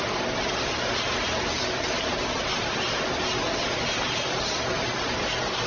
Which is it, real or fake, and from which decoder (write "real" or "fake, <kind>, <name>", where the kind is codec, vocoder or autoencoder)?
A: real